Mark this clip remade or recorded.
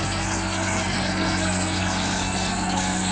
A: remade